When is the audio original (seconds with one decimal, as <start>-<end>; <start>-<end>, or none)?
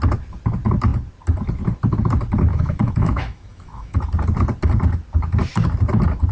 0.0-2.5; 4.0-6.3